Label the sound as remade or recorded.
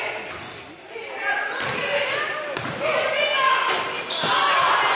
recorded